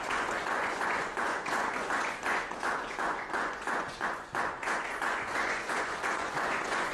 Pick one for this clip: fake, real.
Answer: fake